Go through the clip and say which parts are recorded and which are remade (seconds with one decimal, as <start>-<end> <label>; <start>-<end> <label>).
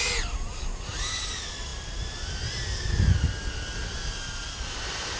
0.0-5.2 recorded